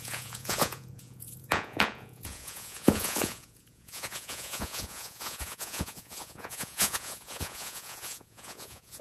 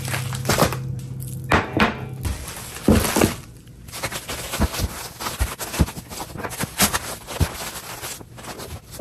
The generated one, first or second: first